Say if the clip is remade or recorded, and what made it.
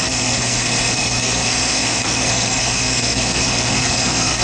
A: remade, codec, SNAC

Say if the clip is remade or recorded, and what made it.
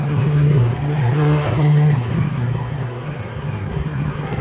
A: remade, codec, SNAC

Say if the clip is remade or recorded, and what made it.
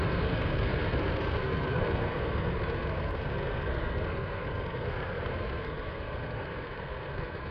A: remade, codec, SNAC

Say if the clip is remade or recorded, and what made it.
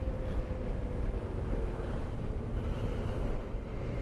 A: recorded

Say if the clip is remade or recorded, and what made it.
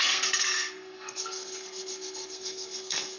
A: remade, codec, SNAC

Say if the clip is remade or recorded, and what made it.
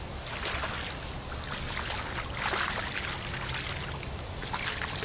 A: recorded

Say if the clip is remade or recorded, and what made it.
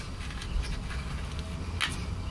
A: recorded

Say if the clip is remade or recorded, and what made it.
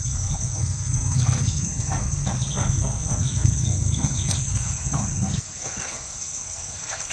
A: remade, codec, SNAC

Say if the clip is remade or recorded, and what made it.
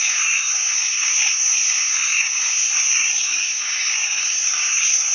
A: remade, codec, SNAC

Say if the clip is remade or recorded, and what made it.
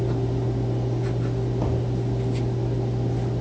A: recorded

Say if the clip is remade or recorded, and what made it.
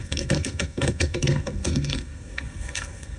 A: remade, codec, SNAC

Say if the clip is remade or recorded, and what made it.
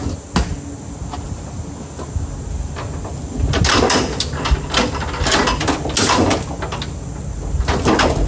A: recorded